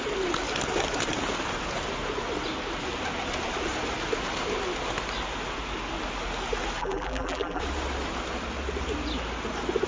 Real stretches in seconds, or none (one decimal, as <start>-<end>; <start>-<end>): 0.0-6.8; 7.6-9.9